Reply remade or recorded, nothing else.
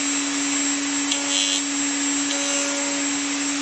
recorded